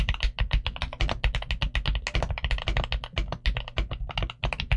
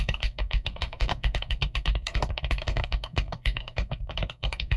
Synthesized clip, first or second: second